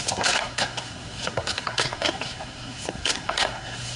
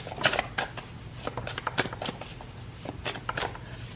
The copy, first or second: first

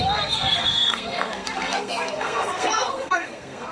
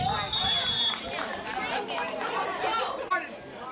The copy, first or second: first